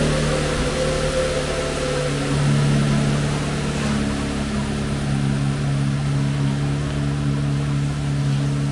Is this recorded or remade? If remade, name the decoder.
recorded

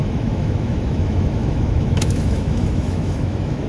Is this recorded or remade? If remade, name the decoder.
remade, autoencoder, DAC-VAE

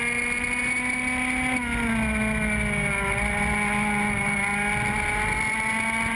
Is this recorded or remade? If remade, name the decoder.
recorded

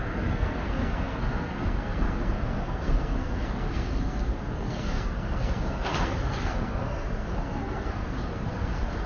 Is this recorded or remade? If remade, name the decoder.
remade, codec, SNAC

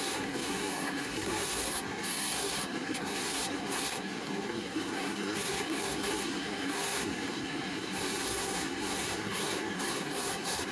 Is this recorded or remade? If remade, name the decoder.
remade, codec, SNAC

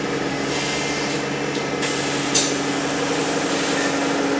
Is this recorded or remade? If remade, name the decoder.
recorded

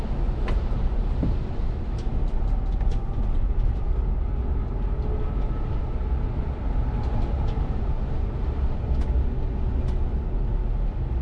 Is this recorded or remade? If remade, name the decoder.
recorded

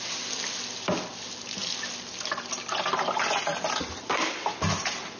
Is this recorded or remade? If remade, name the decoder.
recorded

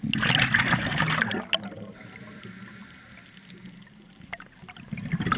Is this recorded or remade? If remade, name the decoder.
recorded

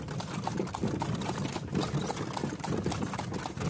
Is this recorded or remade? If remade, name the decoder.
recorded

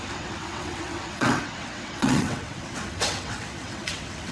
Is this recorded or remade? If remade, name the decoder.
remade, vocoder, WaveNeXt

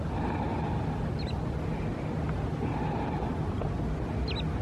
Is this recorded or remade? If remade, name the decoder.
recorded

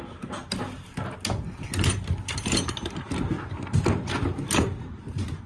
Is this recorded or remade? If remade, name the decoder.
recorded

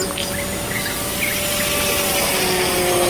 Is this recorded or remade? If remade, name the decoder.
recorded